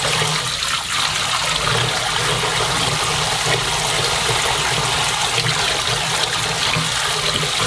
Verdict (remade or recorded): recorded